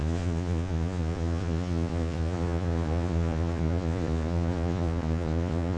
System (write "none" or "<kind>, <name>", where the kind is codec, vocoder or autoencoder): vocoder, Vocos